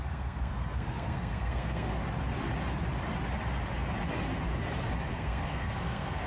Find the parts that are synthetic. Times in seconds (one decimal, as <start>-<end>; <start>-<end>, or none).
0.0-2.0; 5.1-6.3